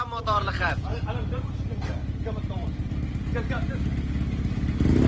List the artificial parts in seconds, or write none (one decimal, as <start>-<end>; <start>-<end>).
0.0-0.9; 1.5-2.0